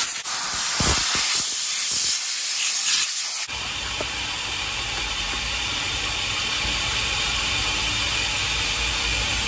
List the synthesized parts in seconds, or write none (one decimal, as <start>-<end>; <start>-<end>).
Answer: none